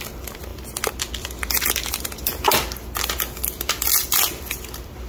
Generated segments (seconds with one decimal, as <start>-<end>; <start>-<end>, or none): none